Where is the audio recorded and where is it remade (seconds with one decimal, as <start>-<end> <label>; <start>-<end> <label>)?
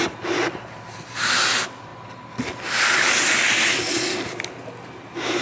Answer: 0.0-5.4 recorded